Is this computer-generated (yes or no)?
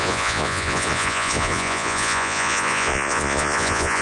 yes